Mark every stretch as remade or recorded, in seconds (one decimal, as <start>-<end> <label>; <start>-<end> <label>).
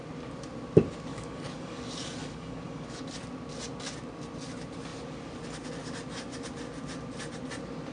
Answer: 0.0-1.1 recorded; 1.1-1.8 remade; 1.8-2.2 recorded; 2.2-3.0 remade; 3.0-7.9 recorded